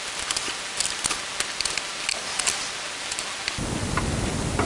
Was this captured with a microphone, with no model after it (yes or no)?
yes